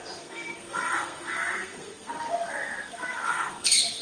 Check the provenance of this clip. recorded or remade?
remade